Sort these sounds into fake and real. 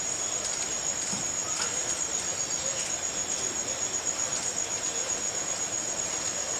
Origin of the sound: real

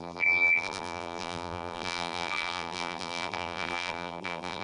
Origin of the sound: fake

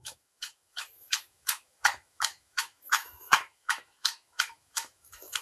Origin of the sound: fake